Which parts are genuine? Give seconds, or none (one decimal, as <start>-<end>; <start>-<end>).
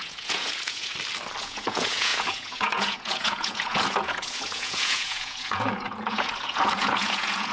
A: 0.9-1.4